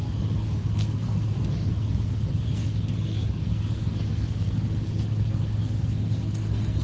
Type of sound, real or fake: fake